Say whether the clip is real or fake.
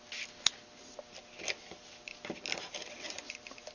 real